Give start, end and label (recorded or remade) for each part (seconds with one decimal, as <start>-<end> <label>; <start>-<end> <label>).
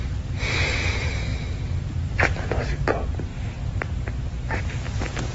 0.0-5.3 recorded